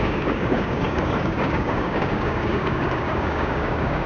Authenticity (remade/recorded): remade